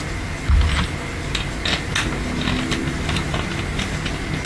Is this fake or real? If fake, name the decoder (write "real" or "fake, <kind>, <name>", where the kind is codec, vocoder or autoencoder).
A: real